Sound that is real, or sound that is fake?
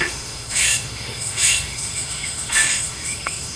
fake